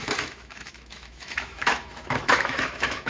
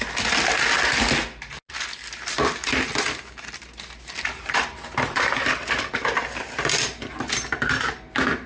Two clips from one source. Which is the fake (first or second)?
first